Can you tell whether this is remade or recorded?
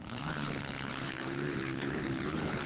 remade